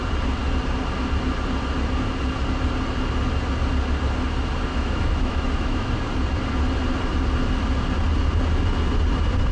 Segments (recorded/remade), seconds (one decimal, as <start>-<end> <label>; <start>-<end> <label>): 0.0-4.7 recorded; 4.7-5.9 remade; 5.9-9.5 recorded